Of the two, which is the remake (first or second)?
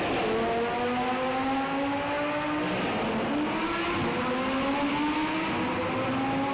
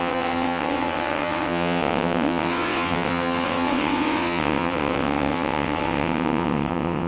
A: second